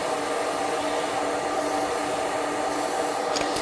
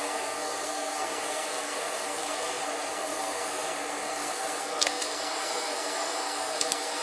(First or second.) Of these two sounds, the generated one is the second